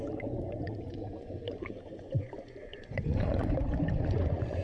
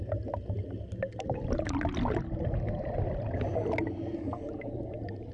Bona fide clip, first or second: second